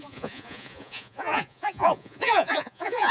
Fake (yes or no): yes